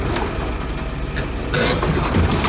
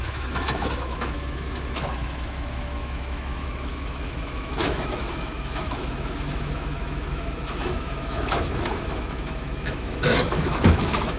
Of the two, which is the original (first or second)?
first